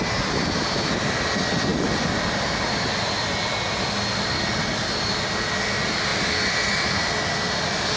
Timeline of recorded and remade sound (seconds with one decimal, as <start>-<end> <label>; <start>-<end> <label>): 0.0-8.0 recorded